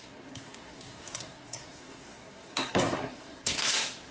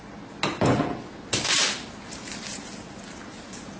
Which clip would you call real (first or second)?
second